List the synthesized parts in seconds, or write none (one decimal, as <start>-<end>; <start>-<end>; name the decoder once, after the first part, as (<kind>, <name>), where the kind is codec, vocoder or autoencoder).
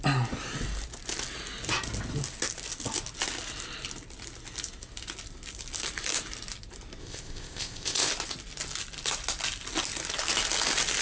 7.0-8.1 (codec, ZipCodec)